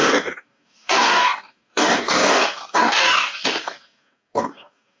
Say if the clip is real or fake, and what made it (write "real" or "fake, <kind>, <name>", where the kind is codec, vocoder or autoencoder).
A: fake, codec, DAC